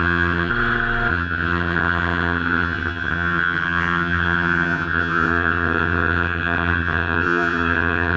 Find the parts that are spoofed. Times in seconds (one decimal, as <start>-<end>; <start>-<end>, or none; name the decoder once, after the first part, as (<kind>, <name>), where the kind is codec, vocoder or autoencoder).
0.0-0.5 (vocoder, HiFi-GAN); 1.1-8.2